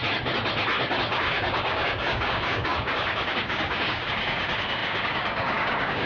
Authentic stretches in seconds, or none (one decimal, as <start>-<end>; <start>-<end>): 0.0-1.1